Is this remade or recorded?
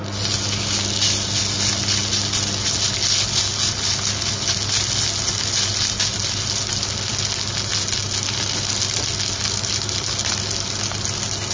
recorded